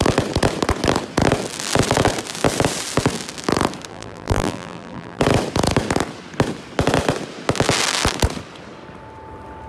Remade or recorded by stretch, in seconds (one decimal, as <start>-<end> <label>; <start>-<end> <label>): 0.0-3.9 recorded; 3.9-5.2 remade; 5.2-9.7 recorded